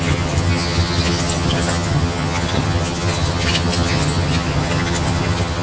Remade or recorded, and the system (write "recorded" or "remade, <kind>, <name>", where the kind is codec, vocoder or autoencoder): remade, vocoder, HiFi-GAN